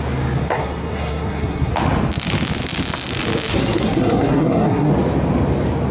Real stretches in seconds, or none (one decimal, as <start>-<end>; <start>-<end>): 0.0-0.4; 1.7-3.5; 4.9-5.9